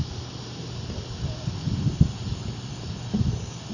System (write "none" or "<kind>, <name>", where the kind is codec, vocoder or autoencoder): none